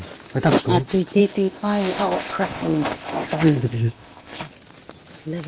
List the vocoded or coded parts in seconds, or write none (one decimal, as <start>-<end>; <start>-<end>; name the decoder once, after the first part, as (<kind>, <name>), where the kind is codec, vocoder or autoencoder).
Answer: 1.2-4.5 (codec, ZipCodec)

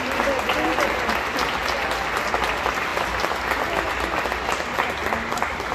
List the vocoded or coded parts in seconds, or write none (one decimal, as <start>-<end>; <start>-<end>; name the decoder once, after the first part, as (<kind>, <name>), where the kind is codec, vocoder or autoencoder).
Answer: none

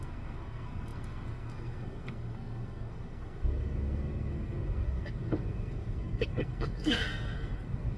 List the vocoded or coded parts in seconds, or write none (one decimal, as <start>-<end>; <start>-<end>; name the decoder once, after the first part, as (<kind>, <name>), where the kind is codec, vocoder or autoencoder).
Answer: 0.0-8.0 (codec, SNAC)

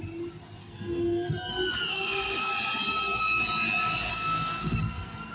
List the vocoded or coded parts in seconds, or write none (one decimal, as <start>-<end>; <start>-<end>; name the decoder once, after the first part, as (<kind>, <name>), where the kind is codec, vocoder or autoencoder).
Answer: 0.6-1.5 (codec, SNAC); 1.9-2.5; 4.1-5.3